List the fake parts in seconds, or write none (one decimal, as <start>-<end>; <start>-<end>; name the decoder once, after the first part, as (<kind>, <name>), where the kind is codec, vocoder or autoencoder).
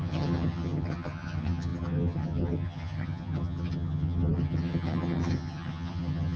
0.0-6.4 (vocoder, HiFi-GAN)